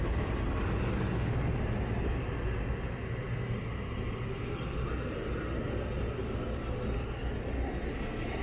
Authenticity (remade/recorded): recorded